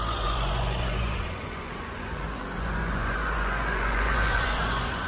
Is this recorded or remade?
remade